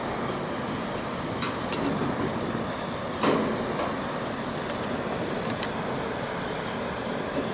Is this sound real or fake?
real